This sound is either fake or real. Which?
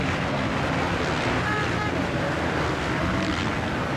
real